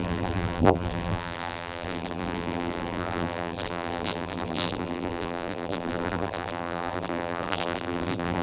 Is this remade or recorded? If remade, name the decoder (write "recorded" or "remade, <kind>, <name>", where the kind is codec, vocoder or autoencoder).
remade, vocoder, BigVGAN v2